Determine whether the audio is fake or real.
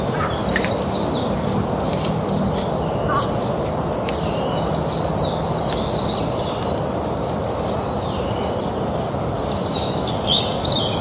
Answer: real